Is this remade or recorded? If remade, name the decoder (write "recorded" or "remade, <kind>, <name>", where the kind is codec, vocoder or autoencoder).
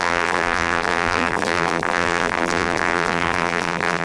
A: remade, vocoder, BigVGAN v2